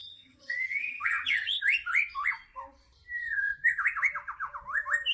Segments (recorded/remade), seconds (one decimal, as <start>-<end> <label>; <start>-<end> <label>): 0.0-1.6 remade; 1.6-5.1 recorded